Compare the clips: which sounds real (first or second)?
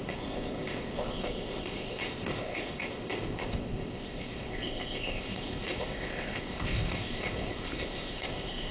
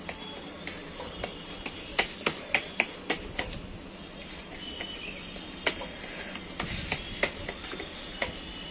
second